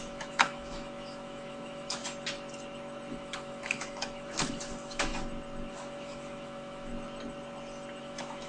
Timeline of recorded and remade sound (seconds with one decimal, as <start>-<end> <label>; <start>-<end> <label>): 0.0-2.0 remade; 2.0-3.1 recorded; 3.1-5.1 remade; 5.1-5.7 recorded; 5.7-6.9 remade; 6.9-8.0 recorded; 8.0-8.5 remade